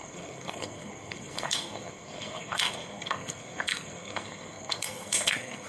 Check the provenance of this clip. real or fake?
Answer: fake